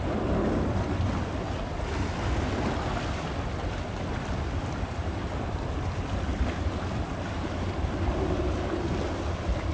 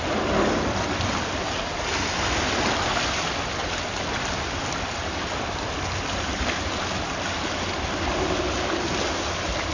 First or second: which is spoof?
first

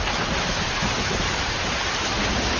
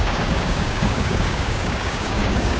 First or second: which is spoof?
second